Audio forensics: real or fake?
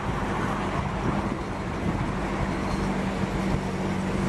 real